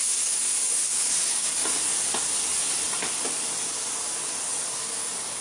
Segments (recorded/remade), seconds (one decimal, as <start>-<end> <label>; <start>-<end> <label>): 0.0-1.6 remade; 1.6-4.7 recorded; 4.7-5.4 remade